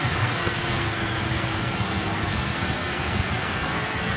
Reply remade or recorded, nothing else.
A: remade